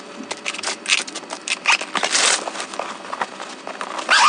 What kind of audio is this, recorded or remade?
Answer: recorded